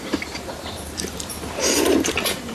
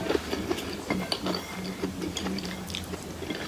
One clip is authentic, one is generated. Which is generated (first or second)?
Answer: first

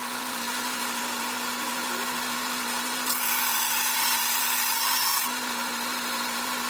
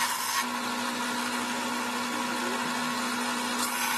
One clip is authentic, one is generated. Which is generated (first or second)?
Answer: first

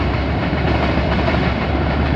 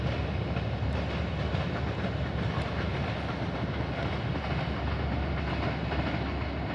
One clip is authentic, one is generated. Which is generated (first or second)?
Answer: first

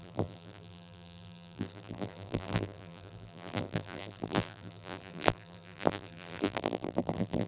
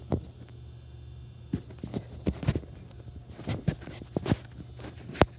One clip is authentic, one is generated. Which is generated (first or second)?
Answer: first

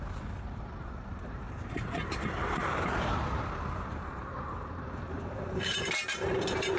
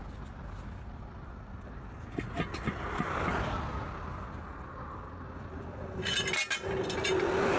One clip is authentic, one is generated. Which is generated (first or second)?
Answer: first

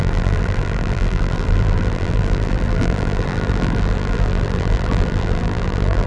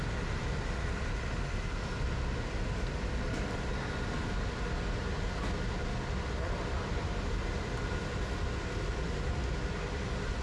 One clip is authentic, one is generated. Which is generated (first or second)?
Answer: first